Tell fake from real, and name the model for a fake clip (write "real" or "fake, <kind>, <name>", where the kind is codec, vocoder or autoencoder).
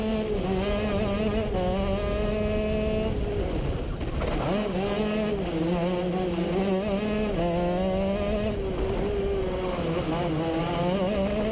real